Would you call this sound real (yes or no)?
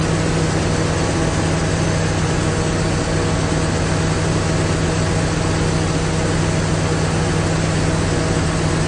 yes